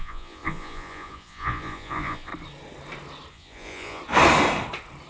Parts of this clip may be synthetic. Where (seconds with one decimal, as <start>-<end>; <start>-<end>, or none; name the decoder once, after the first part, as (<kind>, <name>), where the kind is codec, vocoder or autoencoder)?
0.0-2.3 (vocoder, Vocos); 3.3-4.0